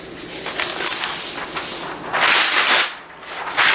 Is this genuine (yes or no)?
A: yes